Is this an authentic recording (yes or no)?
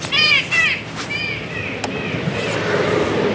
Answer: yes